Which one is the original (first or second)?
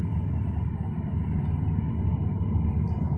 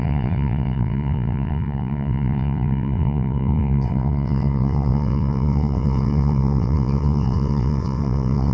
first